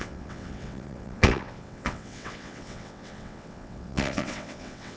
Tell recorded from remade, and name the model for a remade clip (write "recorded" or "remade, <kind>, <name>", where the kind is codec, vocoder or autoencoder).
remade, vocoder, WaveNeXt